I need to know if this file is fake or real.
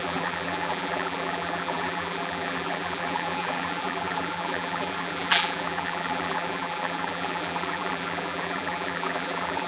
fake